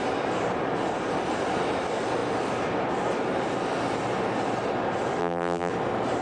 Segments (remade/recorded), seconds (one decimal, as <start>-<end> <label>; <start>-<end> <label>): 0.0-5.2 recorded; 5.2-5.7 remade; 5.7-6.2 recorded